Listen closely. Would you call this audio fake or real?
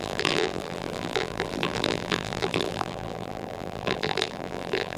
fake